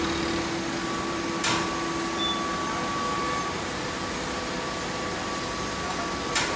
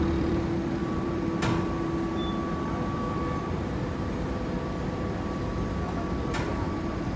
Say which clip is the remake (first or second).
second